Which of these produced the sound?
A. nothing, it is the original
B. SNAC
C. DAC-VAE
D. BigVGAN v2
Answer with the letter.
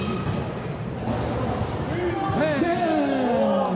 A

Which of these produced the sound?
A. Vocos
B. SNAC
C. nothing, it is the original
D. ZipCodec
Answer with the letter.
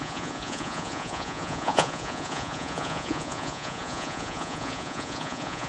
A